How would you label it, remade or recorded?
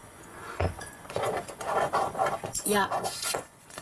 remade